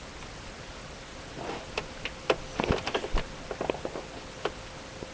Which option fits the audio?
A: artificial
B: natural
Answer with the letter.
B